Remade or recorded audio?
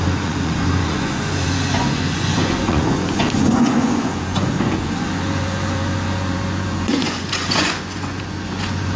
remade